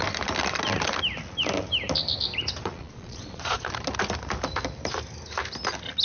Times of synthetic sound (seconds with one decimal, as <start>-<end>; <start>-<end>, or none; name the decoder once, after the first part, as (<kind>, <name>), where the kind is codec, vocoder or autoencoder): 2.6-3.7 (vocoder, Vocos)